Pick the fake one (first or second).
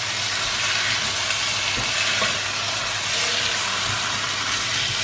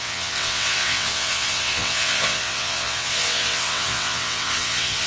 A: second